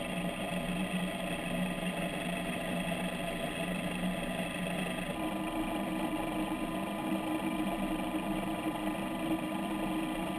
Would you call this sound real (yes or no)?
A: yes